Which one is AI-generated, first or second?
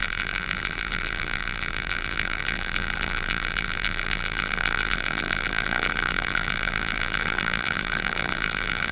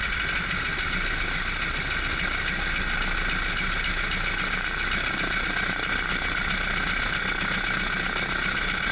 first